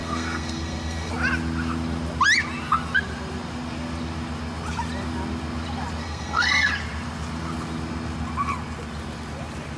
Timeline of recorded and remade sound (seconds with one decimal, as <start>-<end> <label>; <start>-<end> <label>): 0.0-1.1 remade; 1.1-6.0 recorded; 6.0-6.7 remade; 6.7-9.8 recorded

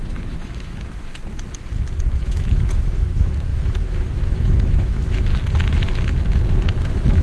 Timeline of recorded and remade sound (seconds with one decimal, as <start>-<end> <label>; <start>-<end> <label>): 0.0-1.1 remade; 1.1-2.2 recorded; 2.2-5.3 remade; 5.3-6.8 recorded; 6.8-7.2 remade

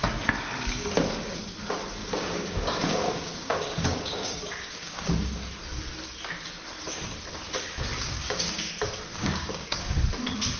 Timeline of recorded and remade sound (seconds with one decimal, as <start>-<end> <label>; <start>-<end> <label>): 0.0-2.0 recorded; 2.0-5.1 remade; 5.1-7.9 recorded; 7.9-8.7 remade; 8.7-9.1 recorded; 9.1-10.0 remade; 10.0-10.6 recorded

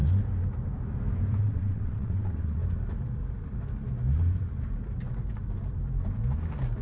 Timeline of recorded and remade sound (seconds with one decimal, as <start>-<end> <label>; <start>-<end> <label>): 0.0-1.4 recorded; 1.4-2.6 remade; 2.6-6.8 recorded